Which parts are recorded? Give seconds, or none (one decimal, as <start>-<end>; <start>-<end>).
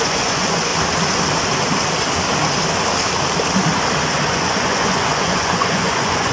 0.7-4.3